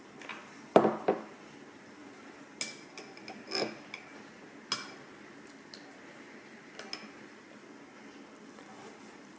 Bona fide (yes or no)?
yes